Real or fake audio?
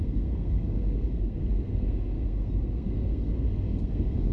fake